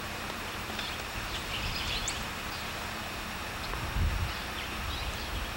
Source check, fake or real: fake